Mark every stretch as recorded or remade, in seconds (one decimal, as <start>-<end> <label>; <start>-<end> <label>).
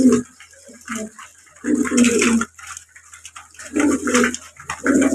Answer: 0.0-5.1 recorded